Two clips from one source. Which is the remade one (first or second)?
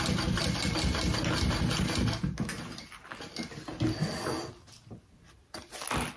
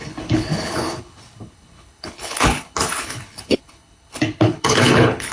second